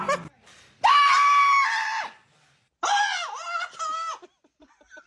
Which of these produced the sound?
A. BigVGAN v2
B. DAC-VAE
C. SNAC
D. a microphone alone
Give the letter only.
D